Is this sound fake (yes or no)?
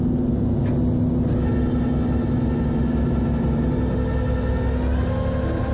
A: no